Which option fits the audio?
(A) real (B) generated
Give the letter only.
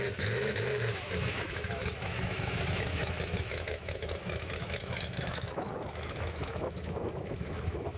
B